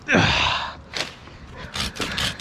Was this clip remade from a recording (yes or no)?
no